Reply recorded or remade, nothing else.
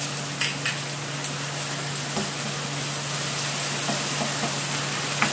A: recorded